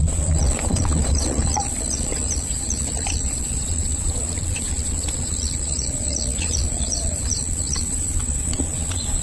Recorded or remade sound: remade